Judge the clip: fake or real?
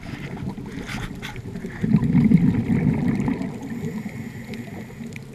real